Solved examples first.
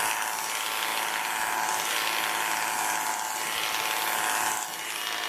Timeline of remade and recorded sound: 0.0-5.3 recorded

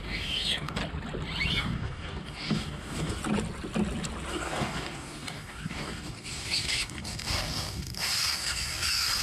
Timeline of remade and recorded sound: 0.0-0.8 remade; 0.8-1.5 recorded; 1.5-3.2 remade; 3.2-4.3 recorded; 4.3-9.2 remade

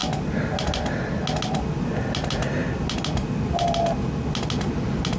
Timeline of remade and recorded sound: 0.0-5.2 recorded

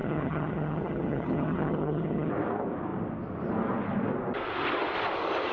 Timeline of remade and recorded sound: 0.0-2.3 remade; 2.3-5.5 recorded

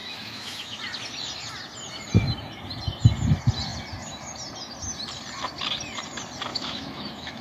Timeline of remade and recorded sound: 0.0-0.8 remade; 0.8-6.5 recorded; 6.5-7.4 remade

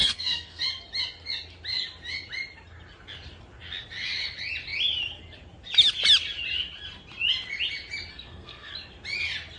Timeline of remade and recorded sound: 0.0-0.6 remade; 0.6-8.1 recorded; 8.1-8.7 remade; 8.7-9.6 recorded

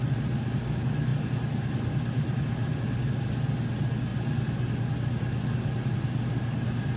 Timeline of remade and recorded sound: 0.0-7.0 recorded